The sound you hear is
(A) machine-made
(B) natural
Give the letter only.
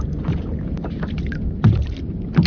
B